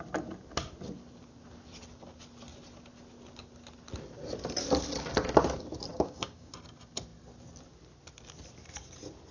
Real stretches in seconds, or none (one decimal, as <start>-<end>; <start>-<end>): 0.0-5.9; 6.5-9.3